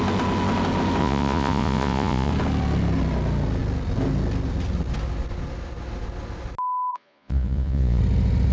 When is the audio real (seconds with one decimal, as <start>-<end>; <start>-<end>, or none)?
0.0-1.0; 2.3-6.9; 8.0-8.5